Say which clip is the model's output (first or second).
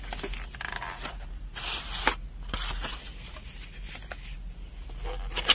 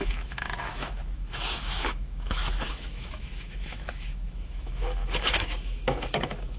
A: second